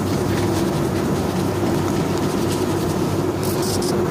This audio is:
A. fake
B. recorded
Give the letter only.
B